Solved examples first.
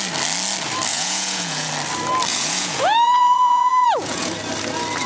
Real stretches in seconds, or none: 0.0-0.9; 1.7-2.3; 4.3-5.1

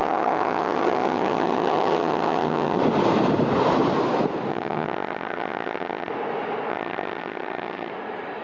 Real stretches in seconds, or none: 2.8-4.5; 6.1-6.7; 7.9-8.4